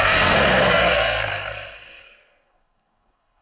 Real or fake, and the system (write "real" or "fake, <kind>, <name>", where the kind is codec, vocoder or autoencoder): fake, codec, SNAC